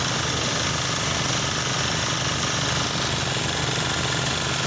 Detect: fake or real real